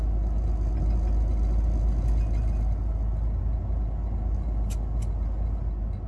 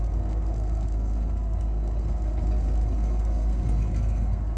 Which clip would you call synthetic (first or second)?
second